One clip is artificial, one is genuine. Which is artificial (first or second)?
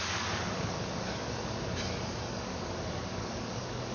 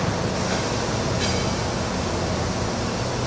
first